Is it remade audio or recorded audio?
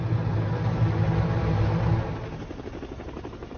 recorded